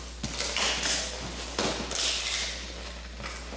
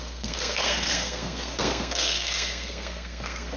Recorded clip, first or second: first